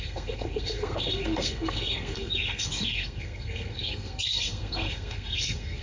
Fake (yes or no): yes